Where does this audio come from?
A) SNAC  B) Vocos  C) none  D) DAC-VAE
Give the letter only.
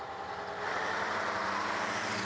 C